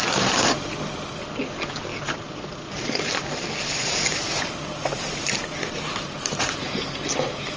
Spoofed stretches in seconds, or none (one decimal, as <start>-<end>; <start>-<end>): 0.0-0.6; 1.9-6.4